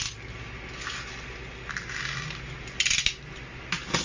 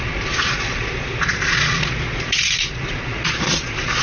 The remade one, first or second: second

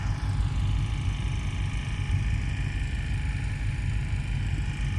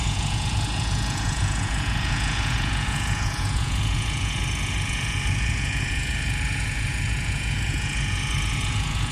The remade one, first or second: second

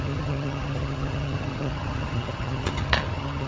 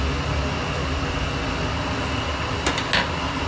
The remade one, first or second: first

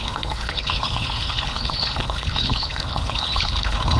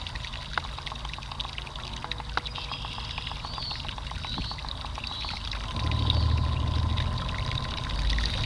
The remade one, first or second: first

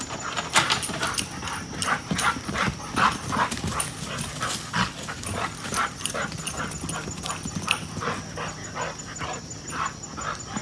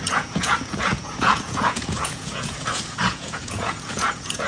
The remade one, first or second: second